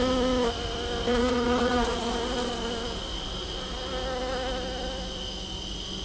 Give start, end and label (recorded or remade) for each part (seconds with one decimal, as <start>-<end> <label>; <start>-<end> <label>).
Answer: 0.0-1.1 recorded; 1.1-2.1 remade; 2.1-6.0 recorded